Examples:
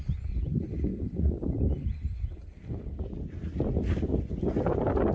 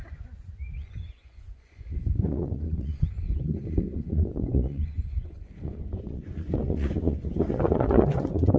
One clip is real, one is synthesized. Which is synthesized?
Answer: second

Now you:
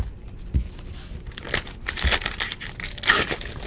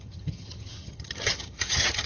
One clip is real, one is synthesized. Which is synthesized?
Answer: second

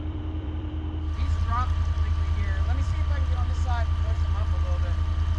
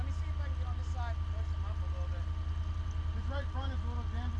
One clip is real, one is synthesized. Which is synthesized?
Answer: first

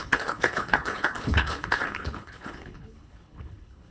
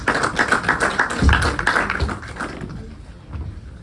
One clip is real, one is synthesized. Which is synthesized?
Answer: first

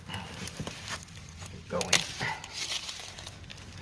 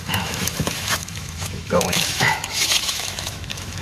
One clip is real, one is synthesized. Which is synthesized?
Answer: second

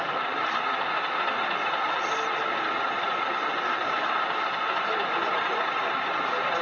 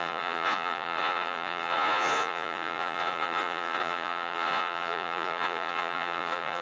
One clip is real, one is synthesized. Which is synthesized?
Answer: second